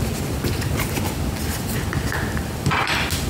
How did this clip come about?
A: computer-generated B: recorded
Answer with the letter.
B